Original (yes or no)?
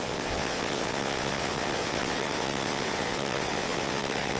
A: no